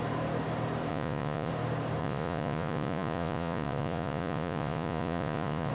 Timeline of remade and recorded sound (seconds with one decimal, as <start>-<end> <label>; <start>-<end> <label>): 0.0-0.9 recorded; 0.9-1.5 remade; 1.5-2.0 recorded; 2.0-5.7 remade